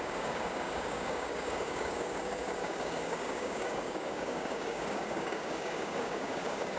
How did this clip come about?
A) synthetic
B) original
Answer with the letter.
A